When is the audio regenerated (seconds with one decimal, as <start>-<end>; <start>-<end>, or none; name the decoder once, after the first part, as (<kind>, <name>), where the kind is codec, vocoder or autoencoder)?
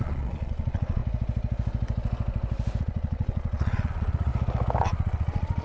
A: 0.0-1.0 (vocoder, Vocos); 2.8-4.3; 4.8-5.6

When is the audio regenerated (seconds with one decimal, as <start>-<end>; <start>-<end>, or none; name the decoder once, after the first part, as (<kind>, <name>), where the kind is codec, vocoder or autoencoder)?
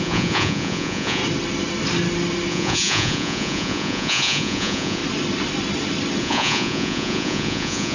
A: 0.0-1.2 (vocoder, Vocos); 2.5-5.0; 6.2-7.9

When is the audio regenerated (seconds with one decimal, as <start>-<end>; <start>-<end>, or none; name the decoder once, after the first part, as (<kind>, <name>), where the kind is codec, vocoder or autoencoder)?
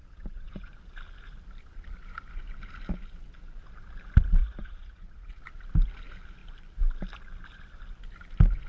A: 0.0-0.7 (vocoder, Vocos); 4.4-5.4